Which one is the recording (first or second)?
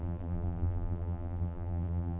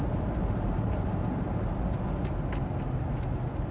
second